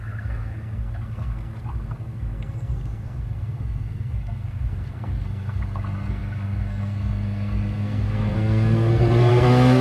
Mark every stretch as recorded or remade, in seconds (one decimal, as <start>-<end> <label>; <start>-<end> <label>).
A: 0.0-9.8 remade